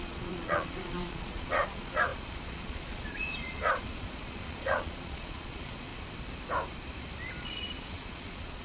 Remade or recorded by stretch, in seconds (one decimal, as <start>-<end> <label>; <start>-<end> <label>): 0.0-5.9 remade; 5.9-7.4 recorded; 7.4-8.6 remade